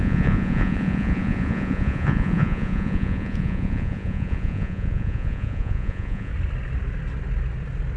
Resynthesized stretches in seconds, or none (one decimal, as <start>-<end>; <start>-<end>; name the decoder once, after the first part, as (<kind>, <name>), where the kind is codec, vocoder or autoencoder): 0.0-6.3 (vocoder, Vocos)